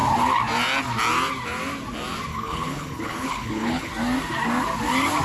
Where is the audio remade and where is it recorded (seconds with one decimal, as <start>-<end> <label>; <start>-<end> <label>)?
0.0-2.3 recorded; 2.3-3.9 remade; 3.9-5.2 recorded